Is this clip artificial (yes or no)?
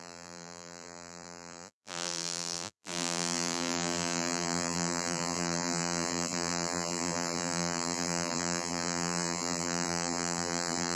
yes